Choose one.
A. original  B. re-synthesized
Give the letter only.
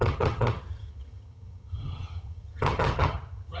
B